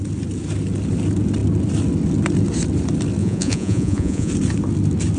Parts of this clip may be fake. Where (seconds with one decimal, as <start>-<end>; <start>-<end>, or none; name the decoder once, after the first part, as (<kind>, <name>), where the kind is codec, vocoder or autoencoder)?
3.2-4.3 (vocoder, Vocos)